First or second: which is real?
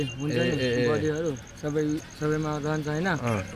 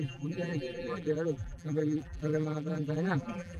first